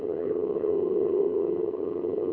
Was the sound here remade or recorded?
remade